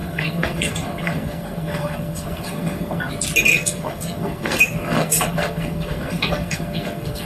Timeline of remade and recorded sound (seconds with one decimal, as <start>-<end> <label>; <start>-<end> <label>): 0.0-3.1 remade; 3.1-3.5 recorded; 3.5-7.3 remade